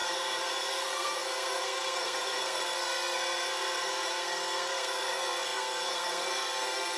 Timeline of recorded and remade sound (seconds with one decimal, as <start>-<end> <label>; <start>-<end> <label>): 0.0-7.0 remade